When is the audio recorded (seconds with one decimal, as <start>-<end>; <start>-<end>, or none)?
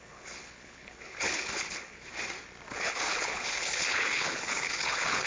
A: 2.1-2.7